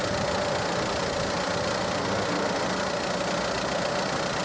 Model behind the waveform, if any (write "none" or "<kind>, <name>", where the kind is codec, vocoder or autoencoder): none